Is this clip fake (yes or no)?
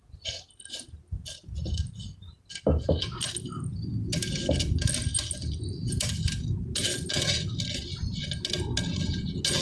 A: no